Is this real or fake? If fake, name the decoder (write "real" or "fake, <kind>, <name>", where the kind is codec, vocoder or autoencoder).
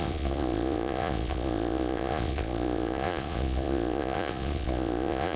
fake, vocoder, Vocos